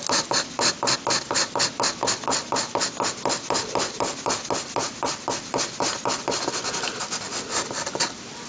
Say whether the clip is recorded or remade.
recorded